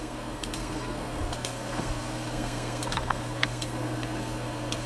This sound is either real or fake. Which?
fake